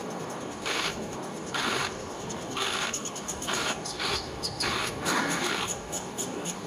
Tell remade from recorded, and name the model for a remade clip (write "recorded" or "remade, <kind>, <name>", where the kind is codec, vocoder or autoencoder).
remade, codec, DAC